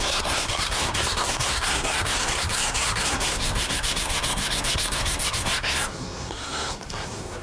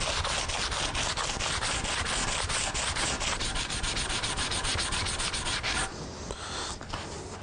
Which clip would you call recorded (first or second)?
second